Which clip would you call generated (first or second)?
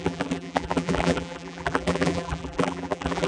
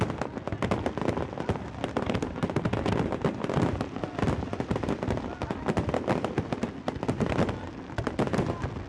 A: first